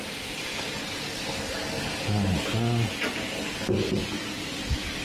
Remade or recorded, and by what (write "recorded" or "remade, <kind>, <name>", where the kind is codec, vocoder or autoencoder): recorded